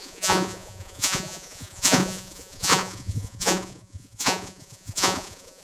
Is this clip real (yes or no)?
no